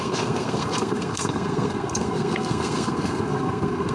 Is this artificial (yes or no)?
yes